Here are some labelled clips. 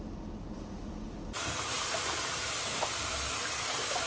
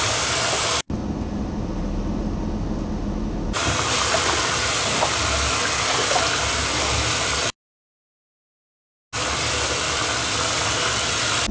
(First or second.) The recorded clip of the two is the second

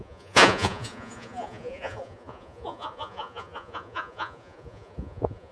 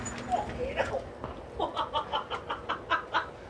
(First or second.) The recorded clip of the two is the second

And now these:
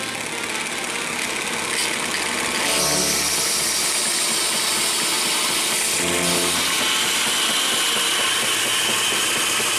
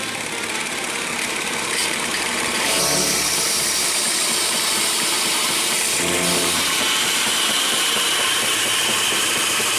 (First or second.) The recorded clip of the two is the first